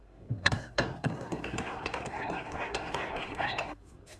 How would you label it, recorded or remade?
remade